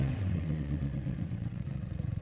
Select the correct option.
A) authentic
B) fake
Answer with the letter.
B